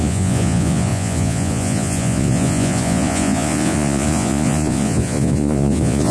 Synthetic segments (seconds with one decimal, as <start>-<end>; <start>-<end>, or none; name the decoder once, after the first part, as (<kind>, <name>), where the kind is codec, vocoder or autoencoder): 0.0-6.1 (vocoder, Vocos)